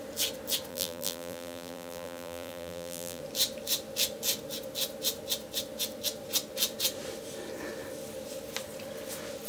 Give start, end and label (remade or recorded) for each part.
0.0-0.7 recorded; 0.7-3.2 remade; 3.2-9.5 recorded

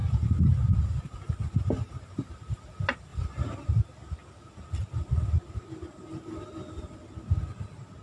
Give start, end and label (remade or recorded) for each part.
0.0-8.0 recorded